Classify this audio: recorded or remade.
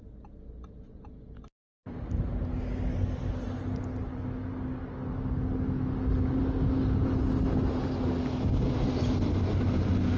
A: recorded